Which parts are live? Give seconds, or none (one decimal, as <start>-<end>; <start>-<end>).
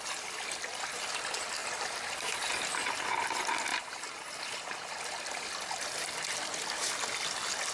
0.0-1.6; 2.1-3.7; 5.0-7.7